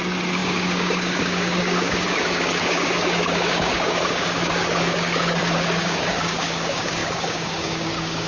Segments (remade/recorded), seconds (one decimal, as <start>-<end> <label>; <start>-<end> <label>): 0.0-8.3 remade